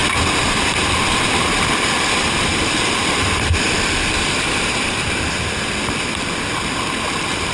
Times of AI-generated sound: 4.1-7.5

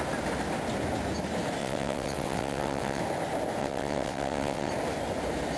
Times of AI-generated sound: 1.6-3.0; 3.6-4.7

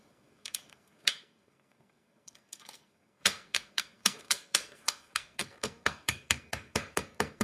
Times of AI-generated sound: 0.0-7.4

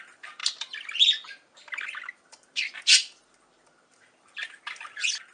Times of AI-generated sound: none

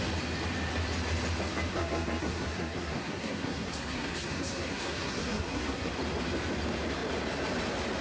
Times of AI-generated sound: 1.7-5.9

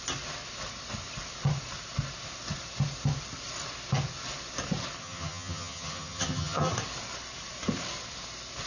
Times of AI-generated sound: 5.0-6.7